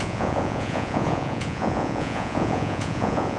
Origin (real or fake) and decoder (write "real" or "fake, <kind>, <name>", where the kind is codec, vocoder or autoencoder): fake, vocoder, Vocos